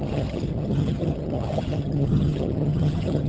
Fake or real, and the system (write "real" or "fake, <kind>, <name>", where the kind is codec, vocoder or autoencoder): fake, vocoder, HiFi-GAN